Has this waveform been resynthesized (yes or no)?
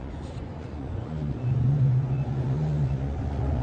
yes